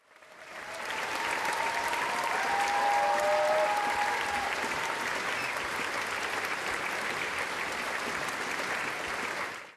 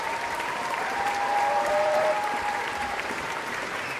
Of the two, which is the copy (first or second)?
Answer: second